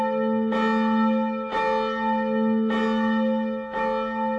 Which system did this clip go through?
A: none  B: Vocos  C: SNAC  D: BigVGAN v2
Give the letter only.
A